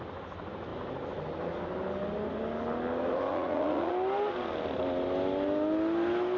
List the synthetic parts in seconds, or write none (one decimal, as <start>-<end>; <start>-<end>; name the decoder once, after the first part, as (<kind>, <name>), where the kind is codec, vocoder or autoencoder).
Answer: 3.3-3.9 (vocoder, Vocos)